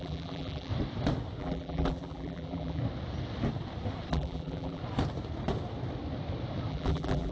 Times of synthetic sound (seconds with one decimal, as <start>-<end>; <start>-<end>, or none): 0.0-0.7; 1.4-2.8; 4.1-4.8; 6.7-7.3